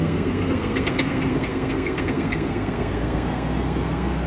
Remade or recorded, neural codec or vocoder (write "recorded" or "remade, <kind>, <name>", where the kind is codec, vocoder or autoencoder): remade, codec, SNAC